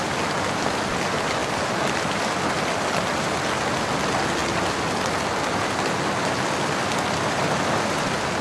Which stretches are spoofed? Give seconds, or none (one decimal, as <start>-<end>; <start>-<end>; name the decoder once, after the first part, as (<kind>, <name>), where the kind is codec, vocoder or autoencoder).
none